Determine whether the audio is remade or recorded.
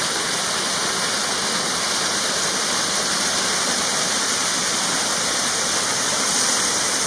recorded